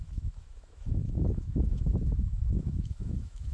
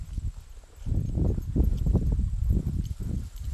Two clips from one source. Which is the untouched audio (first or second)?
second